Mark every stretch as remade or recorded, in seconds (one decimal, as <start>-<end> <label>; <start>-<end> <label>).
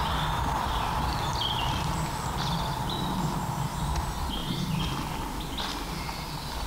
0.0-4.4 remade; 4.4-5.1 recorded; 5.1-6.7 remade